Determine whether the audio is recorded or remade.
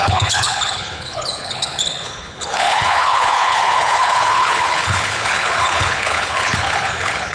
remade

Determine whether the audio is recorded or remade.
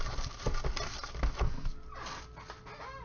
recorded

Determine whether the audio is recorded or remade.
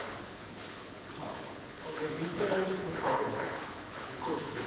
remade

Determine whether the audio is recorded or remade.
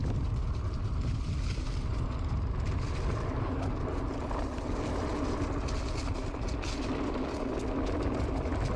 recorded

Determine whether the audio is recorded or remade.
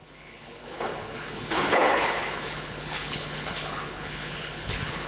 remade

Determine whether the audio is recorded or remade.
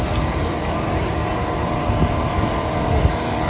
recorded